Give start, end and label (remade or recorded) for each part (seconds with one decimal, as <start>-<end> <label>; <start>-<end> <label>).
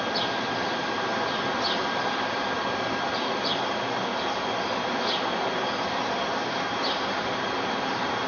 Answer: 0.0-4.1 remade; 4.1-4.8 recorded; 4.8-8.3 remade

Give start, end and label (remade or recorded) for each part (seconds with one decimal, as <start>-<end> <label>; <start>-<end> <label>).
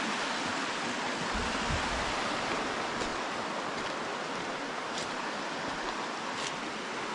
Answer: 0.0-7.1 recorded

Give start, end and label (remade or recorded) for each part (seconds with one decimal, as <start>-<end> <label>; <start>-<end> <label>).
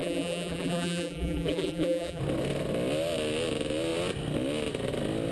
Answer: 0.0-2.2 remade; 2.2-5.3 recorded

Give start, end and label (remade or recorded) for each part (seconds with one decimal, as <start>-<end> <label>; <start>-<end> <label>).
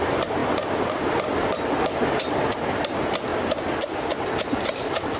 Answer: 0.0-5.2 recorded